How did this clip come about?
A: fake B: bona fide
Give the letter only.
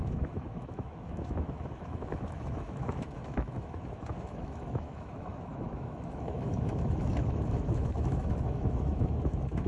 A